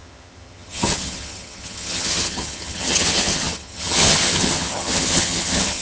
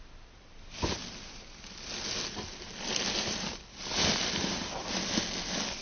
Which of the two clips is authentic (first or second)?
second